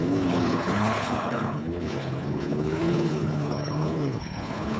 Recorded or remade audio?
remade